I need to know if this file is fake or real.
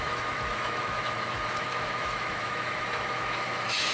fake